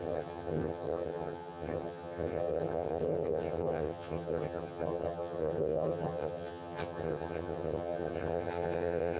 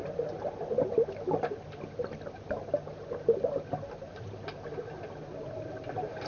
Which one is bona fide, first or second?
second